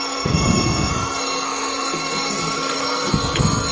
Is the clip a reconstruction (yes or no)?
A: yes